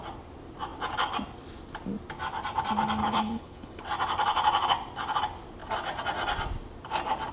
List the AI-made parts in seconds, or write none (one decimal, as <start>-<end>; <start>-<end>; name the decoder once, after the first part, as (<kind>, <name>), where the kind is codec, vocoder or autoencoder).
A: 3.0-3.8 (codec, HILCodec)